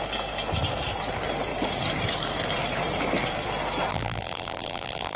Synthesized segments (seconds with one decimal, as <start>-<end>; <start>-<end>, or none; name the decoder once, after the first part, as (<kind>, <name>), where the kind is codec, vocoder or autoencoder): 3.9-5.2 (vocoder, BigVGAN v2)